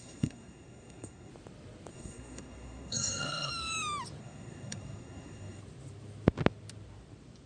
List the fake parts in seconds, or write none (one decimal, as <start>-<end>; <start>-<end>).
0.0-1.3; 1.9-3.5; 4.2-5.6

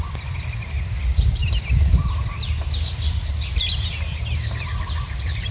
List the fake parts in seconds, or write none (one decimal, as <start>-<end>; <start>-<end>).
none

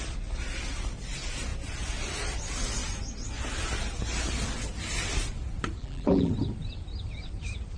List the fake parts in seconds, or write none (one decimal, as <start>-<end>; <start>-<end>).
5.8-6.3

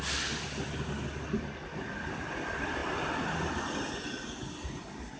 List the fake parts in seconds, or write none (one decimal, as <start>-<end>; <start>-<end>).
none

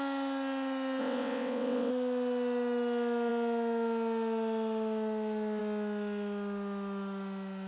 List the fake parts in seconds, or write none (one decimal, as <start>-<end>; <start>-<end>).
1.0-1.9